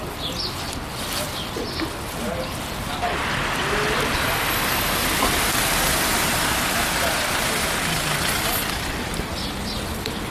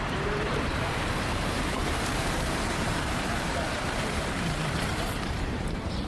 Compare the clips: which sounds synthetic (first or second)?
second